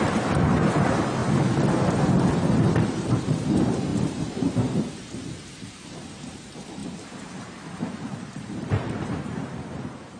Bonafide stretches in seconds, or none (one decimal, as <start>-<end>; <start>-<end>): 1.2-2.3